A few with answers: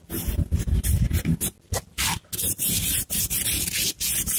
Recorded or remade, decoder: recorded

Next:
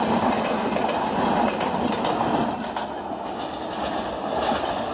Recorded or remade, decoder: recorded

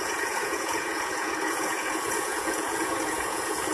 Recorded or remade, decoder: remade, vocoder, Vocos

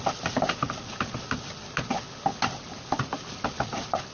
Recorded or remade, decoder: recorded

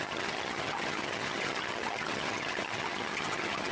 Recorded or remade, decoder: remade, vocoder, HiFi-GAN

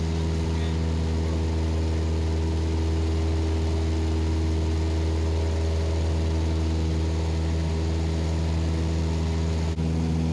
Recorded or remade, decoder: recorded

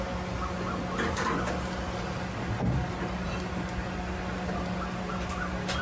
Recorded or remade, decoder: recorded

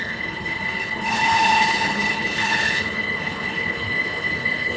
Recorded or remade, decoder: remade, codec, HILCodec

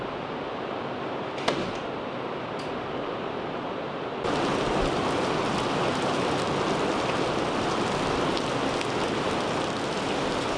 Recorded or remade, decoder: recorded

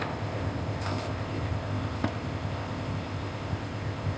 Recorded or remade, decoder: remade, codec, ZipCodec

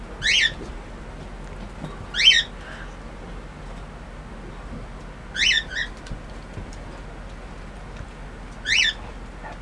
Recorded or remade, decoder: recorded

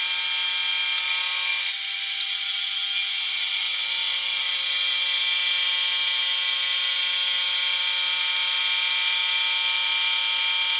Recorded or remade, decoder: recorded